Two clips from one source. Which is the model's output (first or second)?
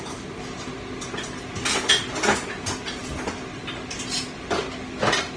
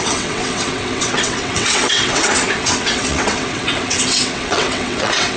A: second